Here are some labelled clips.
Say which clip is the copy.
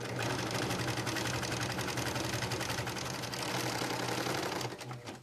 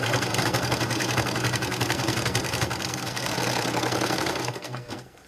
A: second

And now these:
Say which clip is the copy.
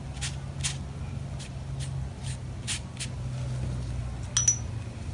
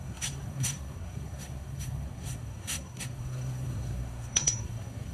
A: second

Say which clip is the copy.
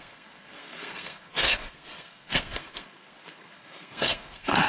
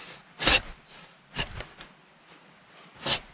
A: first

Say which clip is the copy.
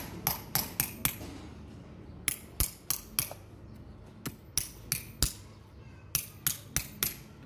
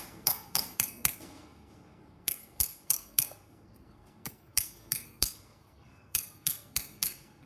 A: second